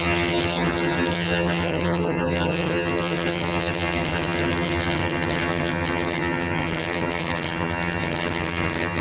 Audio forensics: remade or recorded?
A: remade